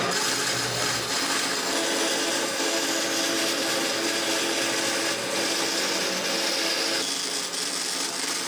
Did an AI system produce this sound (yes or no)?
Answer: no